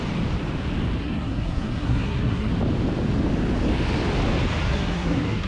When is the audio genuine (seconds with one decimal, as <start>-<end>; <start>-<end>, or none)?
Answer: 0.0-1.0; 2.5-4.6